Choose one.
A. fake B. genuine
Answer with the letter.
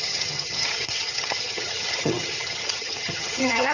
A